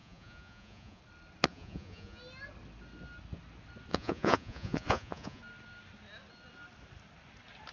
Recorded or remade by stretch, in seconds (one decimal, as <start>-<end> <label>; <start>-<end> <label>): 0.0-1.0 remade; 1.0-1.5 recorded; 1.5-2.2 remade; 2.2-3.9 recorded; 3.9-5.4 remade; 5.4-7.7 recorded